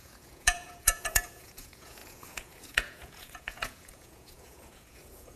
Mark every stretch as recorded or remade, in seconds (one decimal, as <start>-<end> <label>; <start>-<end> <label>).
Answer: 0.0-5.4 remade